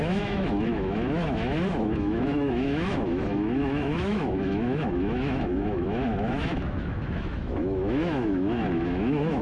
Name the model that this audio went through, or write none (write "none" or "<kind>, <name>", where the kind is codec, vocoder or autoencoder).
autoencoder, DAC-VAE